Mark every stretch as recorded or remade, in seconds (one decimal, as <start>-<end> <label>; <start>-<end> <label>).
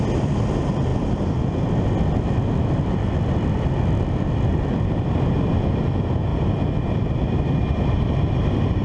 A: 0.0-0.9 recorded; 0.9-1.6 remade; 1.6-4.5 recorded; 4.5-5.5 remade; 5.5-8.8 recorded